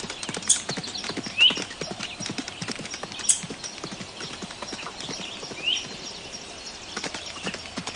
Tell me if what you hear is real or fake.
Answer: real